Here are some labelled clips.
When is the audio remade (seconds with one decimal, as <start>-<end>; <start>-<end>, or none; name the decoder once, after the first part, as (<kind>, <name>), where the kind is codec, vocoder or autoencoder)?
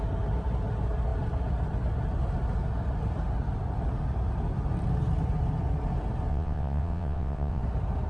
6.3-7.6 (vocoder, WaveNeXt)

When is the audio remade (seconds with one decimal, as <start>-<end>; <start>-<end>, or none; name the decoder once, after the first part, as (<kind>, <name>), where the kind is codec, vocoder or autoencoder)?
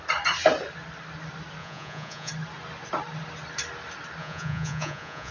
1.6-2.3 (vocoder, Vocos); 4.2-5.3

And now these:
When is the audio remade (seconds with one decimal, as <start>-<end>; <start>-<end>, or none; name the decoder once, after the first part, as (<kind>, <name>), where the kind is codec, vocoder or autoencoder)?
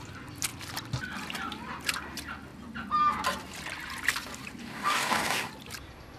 4.6-5.5 (codec, DAC)